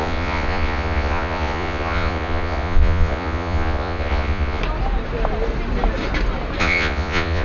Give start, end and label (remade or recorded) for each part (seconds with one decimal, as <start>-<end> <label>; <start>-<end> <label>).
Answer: 0.0-4.6 remade; 4.6-6.6 recorded; 6.6-7.4 remade